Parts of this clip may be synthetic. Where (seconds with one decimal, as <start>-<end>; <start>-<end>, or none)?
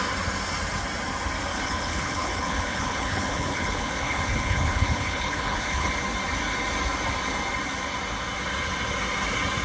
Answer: 1.5-5.9